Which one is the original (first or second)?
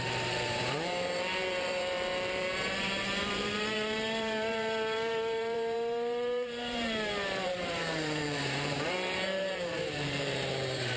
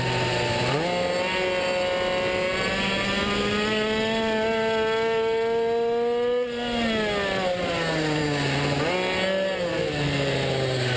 second